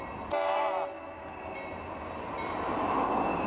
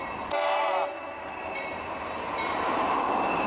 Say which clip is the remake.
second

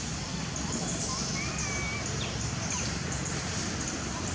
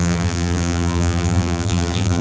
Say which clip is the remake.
second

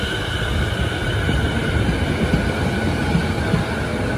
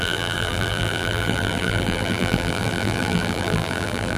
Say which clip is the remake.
second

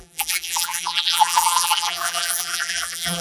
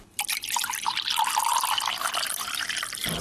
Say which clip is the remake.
first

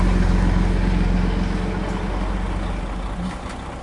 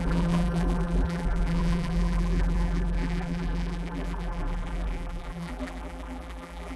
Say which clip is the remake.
second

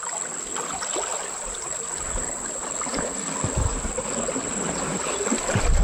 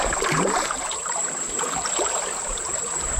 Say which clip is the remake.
second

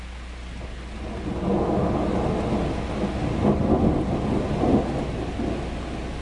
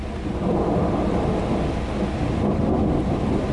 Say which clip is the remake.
second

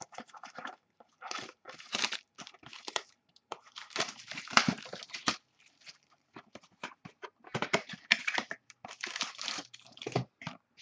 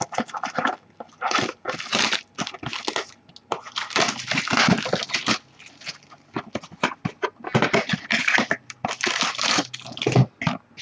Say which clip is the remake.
first